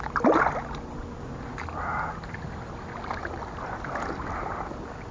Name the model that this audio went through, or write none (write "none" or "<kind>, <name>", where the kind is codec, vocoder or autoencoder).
none